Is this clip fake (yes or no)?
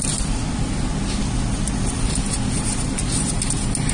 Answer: no